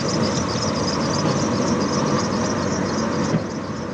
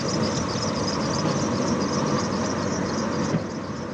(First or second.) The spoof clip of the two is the second